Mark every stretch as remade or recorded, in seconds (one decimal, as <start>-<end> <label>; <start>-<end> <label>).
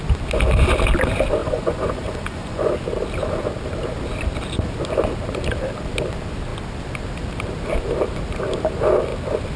0.0-1.4 recorded; 1.4-2.7 remade; 2.7-9.6 recorded